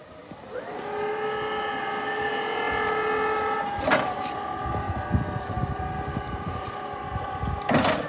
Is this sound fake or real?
real